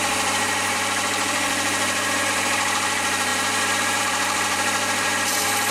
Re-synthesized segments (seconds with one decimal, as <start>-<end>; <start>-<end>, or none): 0.0-5.7